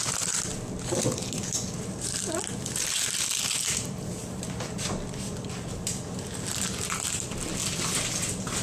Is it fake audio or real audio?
real